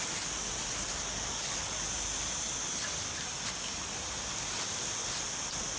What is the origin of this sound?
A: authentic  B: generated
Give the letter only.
A